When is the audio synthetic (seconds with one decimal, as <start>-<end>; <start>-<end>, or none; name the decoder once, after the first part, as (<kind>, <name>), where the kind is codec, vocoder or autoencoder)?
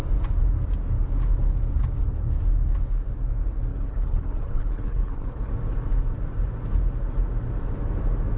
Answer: 3.7-5.5 (codec, HILCodec)